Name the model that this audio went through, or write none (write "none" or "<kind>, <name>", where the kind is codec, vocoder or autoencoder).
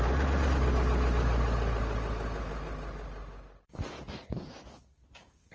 none